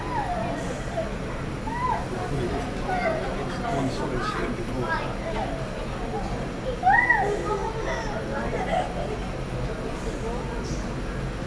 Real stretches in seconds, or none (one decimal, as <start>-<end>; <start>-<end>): 0.0-11.5